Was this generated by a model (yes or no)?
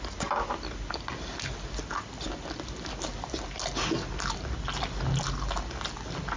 no